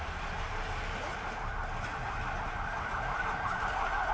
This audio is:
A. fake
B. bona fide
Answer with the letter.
B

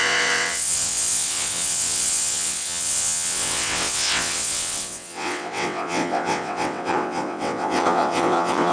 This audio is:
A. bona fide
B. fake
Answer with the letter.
B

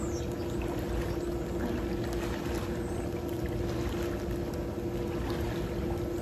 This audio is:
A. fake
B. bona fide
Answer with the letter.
B